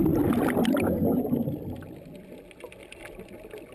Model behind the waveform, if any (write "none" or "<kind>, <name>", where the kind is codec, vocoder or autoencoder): none